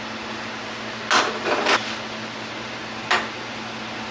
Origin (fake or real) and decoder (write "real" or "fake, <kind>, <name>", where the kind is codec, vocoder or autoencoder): real